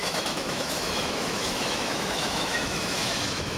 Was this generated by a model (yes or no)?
yes